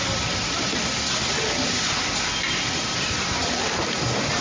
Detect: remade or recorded recorded